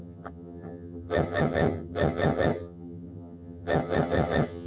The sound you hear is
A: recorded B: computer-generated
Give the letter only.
B